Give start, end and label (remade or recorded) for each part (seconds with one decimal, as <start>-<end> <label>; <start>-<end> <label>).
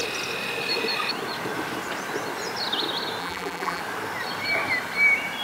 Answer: 0.0-3.2 recorded; 3.2-3.8 remade; 3.8-5.4 recorded